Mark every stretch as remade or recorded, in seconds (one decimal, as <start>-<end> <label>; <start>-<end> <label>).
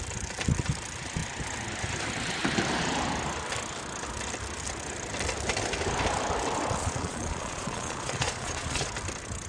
0.0-6.8 recorded; 6.8-8.9 remade; 8.9-9.5 recorded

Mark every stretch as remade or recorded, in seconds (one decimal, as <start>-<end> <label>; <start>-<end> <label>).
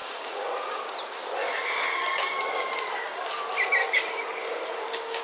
0.0-0.8 remade; 0.8-1.4 recorded; 1.4-3.3 remade; 3.3-3.8 recorded; 3.8-5.2 remade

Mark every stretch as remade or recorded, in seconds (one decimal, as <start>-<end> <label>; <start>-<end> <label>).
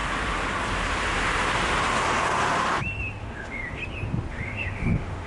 0.0-3.2 recorded; 3.2-3.8 remade; 3.8-4.3 recorded; 4.3-5.3 remade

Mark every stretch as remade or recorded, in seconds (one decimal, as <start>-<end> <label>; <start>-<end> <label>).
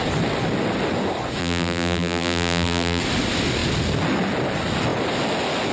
0.0-1.4 recorded; 1.4-3.0 remade; 3.0-5.7 recorded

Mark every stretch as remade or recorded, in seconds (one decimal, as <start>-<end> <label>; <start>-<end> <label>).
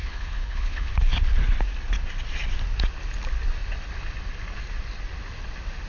0.0-0.9 remade; 0.9-5.9 recorded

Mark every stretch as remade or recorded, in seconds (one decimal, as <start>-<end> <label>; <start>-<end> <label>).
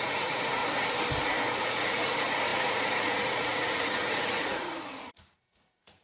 0.0-0.6 remade; 0.6-1.6 recorded; 1.6-6.0 remade